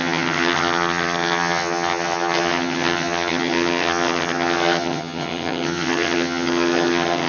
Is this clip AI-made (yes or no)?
yes